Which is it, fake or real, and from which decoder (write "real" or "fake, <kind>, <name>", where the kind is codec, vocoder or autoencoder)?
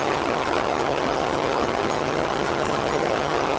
fake, vocoder, HiFi-GAN